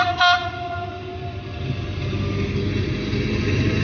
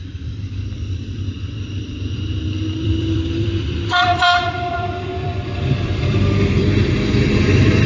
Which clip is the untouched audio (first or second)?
first